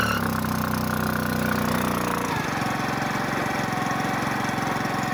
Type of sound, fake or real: real